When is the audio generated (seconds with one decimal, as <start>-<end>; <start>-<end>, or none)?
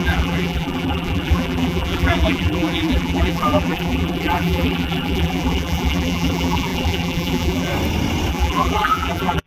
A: 0.0-7.7; 8.3-9.5